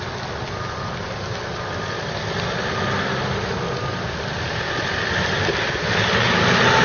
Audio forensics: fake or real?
real